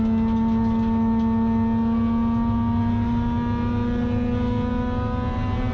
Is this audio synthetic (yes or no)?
no